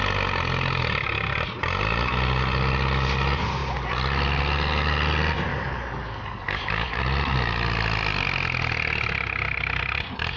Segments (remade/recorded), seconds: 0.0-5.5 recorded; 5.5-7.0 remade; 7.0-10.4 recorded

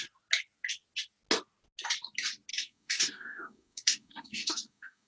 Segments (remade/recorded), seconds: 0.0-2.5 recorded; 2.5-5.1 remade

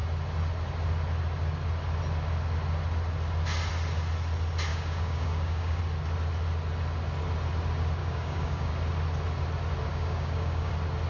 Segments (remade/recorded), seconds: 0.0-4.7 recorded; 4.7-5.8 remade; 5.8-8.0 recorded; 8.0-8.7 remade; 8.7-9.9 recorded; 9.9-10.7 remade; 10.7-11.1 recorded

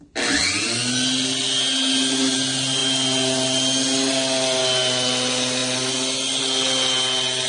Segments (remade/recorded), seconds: 0.0-7.5 recorded

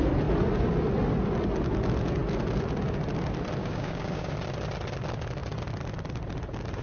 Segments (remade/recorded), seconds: 0.0-3.6 recorded; 3.6-4.3 remade; 4.3-6.8 recorded